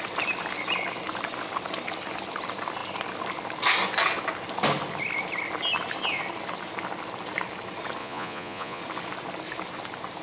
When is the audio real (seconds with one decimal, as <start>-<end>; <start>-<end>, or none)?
0.0-8.0; 8.8-10.2